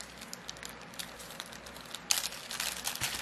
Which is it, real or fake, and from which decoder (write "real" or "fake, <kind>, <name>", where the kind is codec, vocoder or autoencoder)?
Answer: real